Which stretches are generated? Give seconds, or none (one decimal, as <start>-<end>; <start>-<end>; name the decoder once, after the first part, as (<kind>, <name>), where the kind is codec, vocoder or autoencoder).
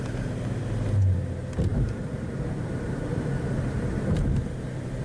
1.7-5.0 (vocoder, BigVGAN v2)